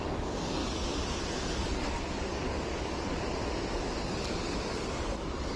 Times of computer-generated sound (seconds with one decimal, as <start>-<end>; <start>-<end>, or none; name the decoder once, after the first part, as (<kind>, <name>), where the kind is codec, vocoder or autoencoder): 0.0-0.6 (codec, DAC); 1.8-3.2; 4.3-5.6